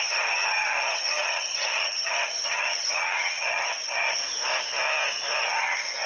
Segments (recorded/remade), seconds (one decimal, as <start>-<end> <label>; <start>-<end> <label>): 0.0-4.2 remade; 4.2-5.4 recorded; 5.4-6.1 remade